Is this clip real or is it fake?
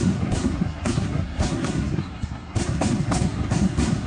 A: fake